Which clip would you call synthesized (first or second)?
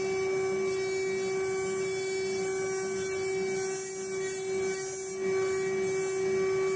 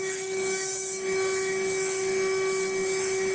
second